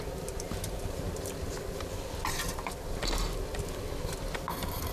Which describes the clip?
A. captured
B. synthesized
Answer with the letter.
A